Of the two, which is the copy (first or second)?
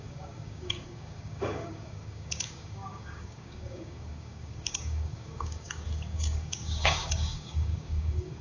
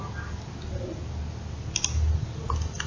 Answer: first